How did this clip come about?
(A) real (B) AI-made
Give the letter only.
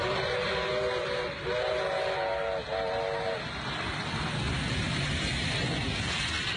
A